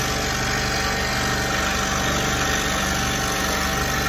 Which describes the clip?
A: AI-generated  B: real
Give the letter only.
B